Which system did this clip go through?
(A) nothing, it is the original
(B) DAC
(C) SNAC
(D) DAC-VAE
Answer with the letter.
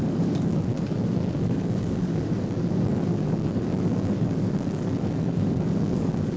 B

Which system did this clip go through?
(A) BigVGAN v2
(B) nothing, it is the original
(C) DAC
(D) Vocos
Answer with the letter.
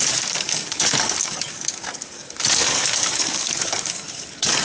C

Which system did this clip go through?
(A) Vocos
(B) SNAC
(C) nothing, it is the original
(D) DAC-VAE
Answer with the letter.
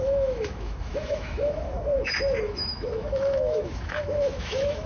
D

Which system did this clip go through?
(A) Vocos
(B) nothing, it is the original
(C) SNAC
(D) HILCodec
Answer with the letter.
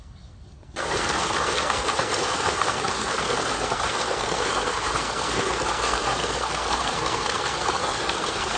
C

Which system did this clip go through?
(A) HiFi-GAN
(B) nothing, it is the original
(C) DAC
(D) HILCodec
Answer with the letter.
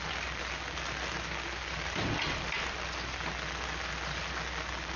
B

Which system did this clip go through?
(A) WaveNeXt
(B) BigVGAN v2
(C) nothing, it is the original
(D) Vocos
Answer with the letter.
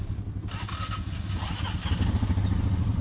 C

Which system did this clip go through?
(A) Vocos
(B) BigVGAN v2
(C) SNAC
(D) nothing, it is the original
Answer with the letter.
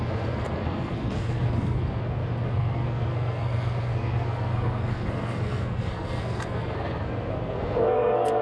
C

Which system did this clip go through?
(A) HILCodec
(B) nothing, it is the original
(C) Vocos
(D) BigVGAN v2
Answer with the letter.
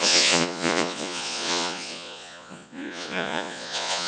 C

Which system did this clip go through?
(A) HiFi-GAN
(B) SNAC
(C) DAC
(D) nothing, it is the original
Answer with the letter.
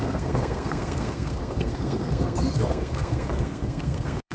B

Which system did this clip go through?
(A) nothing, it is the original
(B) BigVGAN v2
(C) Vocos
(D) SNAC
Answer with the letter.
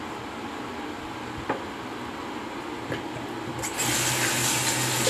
A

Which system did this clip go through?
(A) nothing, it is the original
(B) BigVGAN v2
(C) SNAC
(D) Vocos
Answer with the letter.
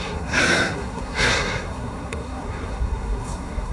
C